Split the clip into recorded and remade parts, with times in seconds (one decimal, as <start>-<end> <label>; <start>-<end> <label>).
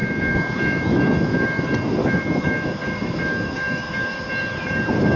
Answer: 0.0-1.6 remade; 1.6-2.0 recorded; 2.0-4.3 remade; 4.3-5.2 recorded